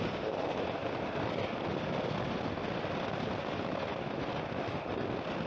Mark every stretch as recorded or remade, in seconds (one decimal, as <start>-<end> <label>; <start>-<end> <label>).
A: 0.0-5.5 recorded